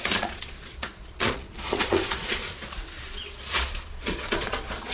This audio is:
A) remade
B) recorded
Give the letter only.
A